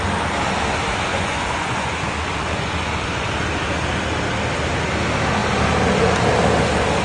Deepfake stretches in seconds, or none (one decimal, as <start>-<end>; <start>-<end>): 1.1-3.3